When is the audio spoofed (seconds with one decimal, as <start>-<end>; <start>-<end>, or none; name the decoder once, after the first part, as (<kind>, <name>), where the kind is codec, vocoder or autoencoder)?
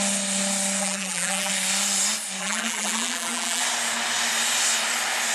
0.8-1.5 (vocoder, BigVGAN v2); 2.4-3.6